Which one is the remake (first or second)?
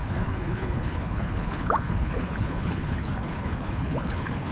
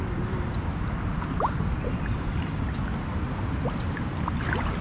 first